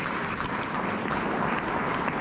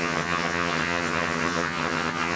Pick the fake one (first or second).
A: second